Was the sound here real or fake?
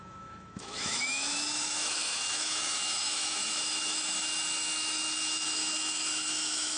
fake